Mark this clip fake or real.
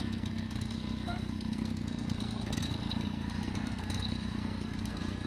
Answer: fake